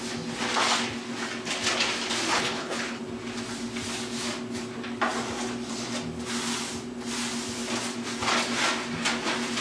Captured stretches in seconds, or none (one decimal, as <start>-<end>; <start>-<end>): 0.0-2.3; 3.0-9.6